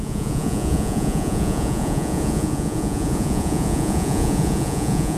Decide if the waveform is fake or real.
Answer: fake